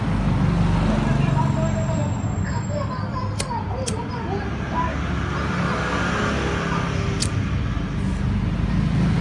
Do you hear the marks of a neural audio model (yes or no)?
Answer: no